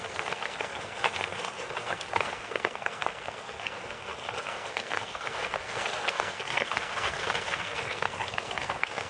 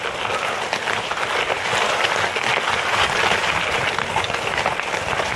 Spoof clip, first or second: first